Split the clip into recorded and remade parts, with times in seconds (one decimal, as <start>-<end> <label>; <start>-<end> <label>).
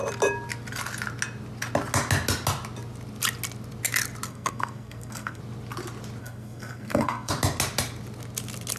0.0-4.3 recorded; 4.3-5.4 remade; 5.4-6.2 recorded; 6.2-7.3 remade; 7.3-8.8 recorded